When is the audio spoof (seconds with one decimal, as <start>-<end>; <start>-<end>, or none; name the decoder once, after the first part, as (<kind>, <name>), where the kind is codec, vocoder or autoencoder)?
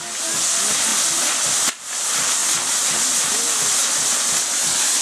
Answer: none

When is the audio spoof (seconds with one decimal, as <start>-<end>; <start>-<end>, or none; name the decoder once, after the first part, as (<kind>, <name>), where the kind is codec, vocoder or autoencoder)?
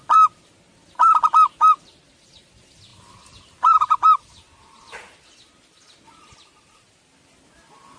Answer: none